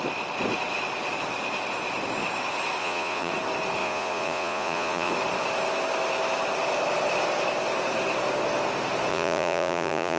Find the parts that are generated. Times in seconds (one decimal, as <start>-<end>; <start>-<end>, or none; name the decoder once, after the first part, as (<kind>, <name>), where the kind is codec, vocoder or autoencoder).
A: 2.8-3.3 (vocoder, Vocos); 3.8-5.1; 9.1-10.2